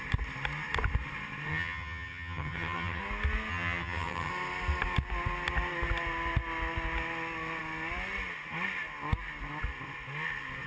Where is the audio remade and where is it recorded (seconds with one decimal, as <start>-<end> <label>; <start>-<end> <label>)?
0.0-1.5 recorded; 1.5-3.0 remade; 3.0-3.5 recorded; 3.5-4.3 remade; 4.3-10.7 recorded

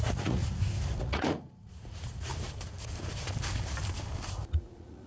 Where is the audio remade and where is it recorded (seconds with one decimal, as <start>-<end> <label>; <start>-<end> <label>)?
0.0-0.4 remade; 0.4-1.0 recorded; 1.0-2.3 remade; 2.3-4.3 recorded; 4.3-5.1 remade

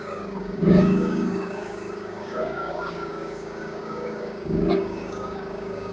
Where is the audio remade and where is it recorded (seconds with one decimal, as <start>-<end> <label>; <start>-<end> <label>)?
0.0-5.9 remade

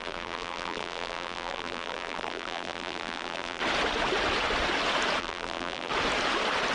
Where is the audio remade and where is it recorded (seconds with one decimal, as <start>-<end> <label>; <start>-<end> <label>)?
0.0-3.6 remade; 3.6-5.2 recorded; 5.2-5.9 remade; 5.9-6.7 recorded

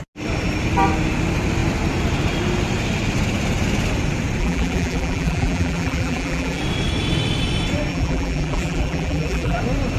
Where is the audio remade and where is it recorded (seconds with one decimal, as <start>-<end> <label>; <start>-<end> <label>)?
0.0-4.4 recorded; 4.4-6.6 remade; 6.6-7.9 recorded; 7.9-9.6 remade; 9.6-10.0 recorded

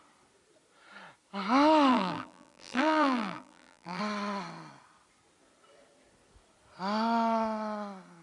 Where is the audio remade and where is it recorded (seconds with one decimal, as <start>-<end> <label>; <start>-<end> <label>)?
0.0-1.9 recorded; 1.9-4.0 remade; 4.0-8.2 recorded